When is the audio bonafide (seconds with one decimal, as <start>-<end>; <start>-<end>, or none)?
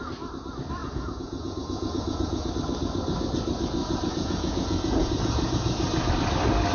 0.0-0.8; 2.5-3.8; 6.1-6.7